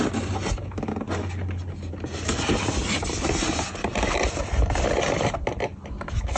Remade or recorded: recorded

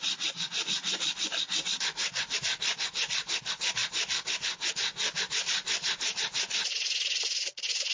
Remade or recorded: recorded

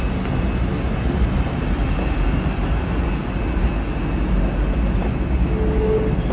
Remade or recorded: recorded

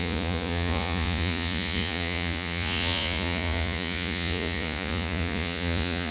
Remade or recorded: remade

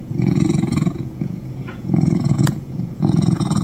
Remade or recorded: remade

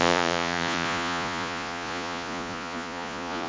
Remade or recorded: remade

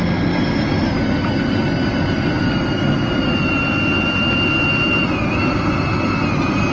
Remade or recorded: recorded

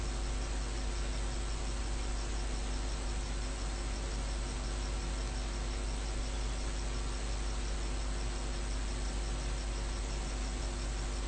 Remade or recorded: recorded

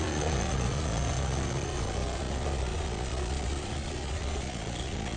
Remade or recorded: remade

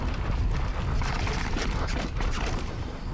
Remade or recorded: recorded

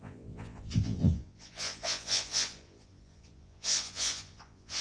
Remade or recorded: remade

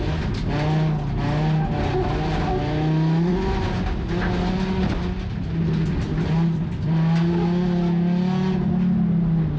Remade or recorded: recorded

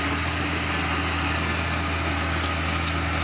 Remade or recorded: recorded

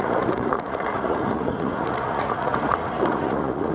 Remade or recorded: remade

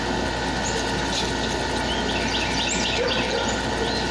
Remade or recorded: recorded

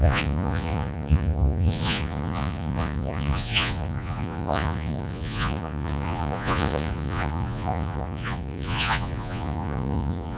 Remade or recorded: remade